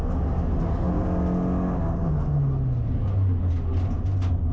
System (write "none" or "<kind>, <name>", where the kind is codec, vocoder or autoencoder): none